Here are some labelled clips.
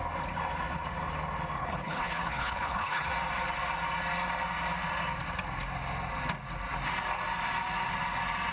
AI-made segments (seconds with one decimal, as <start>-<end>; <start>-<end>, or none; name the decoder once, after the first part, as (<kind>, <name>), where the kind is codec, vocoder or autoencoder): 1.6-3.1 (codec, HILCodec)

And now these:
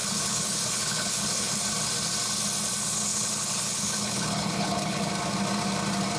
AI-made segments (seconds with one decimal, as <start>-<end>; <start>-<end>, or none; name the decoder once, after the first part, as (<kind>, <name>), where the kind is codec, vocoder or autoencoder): 0.0-1.6 (codec, HILCodec); 3.1-5.1

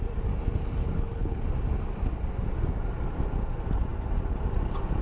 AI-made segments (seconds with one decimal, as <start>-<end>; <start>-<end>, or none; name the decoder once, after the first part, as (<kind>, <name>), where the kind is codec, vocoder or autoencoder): 0.8-1.4 (codec, HILCodec)